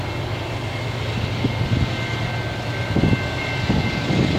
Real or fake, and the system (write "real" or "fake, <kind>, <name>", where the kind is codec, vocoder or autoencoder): real